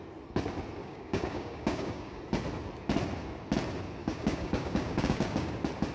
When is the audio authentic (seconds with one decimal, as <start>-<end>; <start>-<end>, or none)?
0.0-0.8; 2.2-4.0; 5.5-5.9